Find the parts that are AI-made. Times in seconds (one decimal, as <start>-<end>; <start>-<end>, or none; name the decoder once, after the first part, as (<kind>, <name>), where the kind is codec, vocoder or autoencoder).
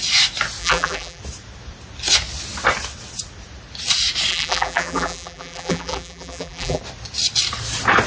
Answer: 0.6-1.2 (vocoder, BigVGAN v2); 4.3-6.8